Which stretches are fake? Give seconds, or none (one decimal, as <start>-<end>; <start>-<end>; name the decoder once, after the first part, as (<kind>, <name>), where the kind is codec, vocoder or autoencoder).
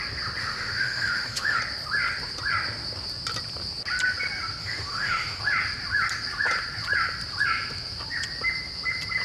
0.4-1.6 (autoencoder, DAC-VAE); 4.6-5.4